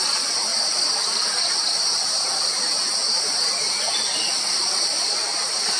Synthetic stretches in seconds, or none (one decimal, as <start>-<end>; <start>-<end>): none